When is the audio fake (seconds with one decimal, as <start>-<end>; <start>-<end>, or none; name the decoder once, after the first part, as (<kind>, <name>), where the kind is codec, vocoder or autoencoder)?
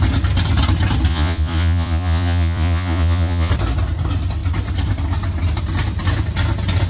1.1-3.5 (vocoder, Vocos)